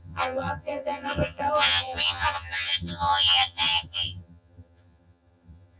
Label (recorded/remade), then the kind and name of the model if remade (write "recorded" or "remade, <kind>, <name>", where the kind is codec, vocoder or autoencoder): remade, vocoder, HiFi-GAN